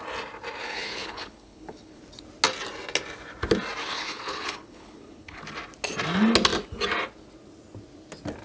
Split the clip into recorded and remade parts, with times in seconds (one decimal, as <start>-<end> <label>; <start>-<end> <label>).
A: 0.0-0.6 recorded; 0.6-2.0 remade; 2.0-3.8 recorded; 3.8-5.4 remade; 5.4-8.4 recorded